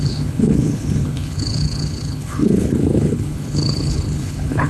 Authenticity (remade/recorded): remade